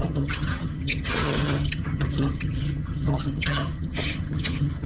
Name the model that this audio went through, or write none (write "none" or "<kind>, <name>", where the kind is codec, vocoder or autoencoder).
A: vocoder, HiFi-GAN